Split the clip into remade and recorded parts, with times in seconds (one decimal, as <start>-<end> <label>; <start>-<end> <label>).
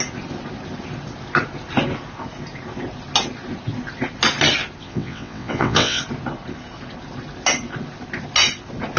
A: 0.0-4.8 recorded; 4.8-6.0 remade; 6.0-9.0 recorded